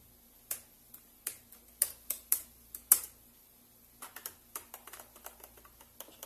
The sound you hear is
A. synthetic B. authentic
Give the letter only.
B